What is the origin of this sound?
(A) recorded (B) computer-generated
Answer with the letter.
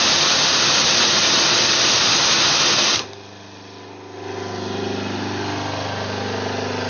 A